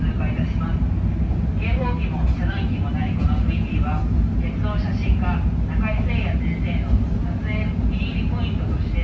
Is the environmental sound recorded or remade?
recorded